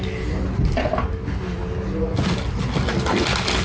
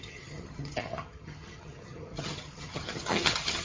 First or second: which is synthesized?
second